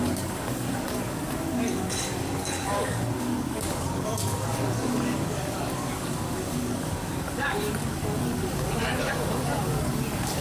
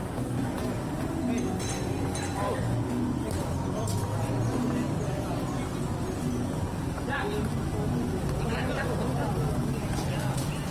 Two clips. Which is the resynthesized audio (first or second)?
first